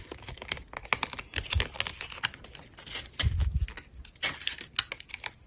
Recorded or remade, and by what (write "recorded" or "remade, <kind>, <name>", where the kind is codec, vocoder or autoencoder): recorded